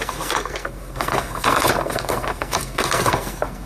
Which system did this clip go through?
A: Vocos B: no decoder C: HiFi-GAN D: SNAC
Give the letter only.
D